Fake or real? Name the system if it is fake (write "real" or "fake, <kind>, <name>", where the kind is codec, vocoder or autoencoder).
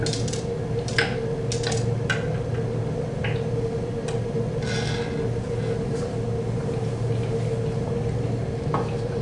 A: real